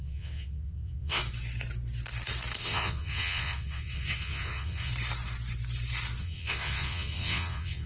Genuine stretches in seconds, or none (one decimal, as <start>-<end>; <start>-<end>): 1.2-2.6; 4.9-6.2